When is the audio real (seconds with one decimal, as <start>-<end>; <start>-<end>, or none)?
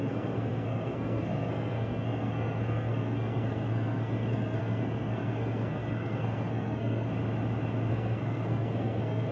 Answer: 7.1-7.9